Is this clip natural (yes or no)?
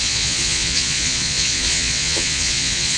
no